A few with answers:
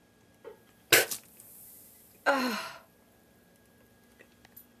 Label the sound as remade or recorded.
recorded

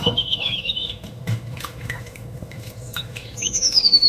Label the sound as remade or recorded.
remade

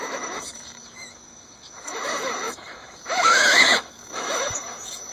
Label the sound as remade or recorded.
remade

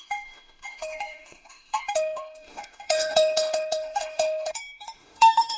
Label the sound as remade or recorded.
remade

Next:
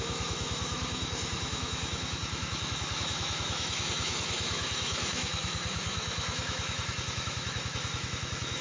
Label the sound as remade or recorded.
remade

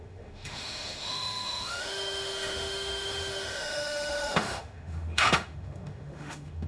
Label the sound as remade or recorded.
remade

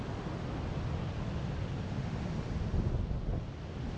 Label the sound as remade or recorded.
recorded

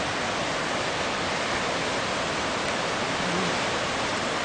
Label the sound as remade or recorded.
recorded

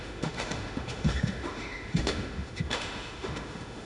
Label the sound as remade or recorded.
remade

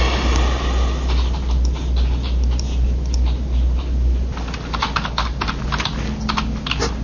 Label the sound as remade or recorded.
recorded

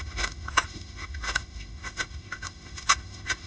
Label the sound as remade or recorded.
remade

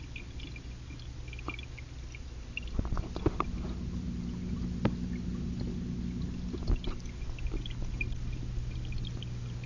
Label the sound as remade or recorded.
recorded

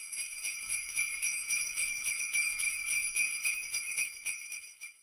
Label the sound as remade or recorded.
remade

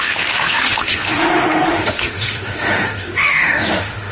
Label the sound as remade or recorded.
remade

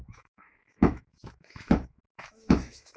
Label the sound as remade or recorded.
remade